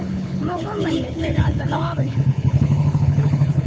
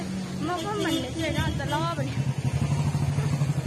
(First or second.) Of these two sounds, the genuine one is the second